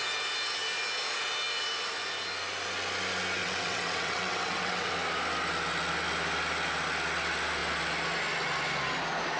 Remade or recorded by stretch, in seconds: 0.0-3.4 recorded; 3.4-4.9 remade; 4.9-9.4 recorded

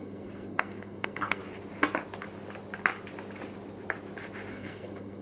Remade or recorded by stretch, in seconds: 0.0-1.4 remade; 1.4-4.5 recorded; 4.5-5.2 remade

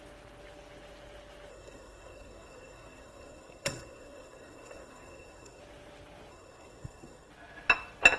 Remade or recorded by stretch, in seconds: 0.0-1.5 recorded; 1.5-5.6 remade; 5.6-6.3 recorded; 6.3-7.3 remade; 7.3-8.2 recorded

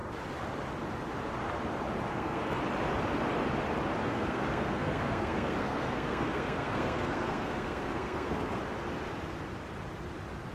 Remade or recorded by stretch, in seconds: 0.0-2.1 recorded; 2.1-2.6 remade; 2.6-4.0 recorded; 4.0-8.6 remade; 8.6-10.5 recorded

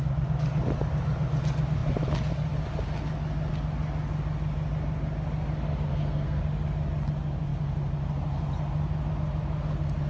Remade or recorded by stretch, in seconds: 0.0-5.9 recorded; 5.9-6.4 remade; 6.4-10.1 recorded